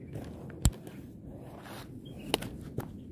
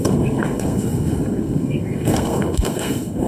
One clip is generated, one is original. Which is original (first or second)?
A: first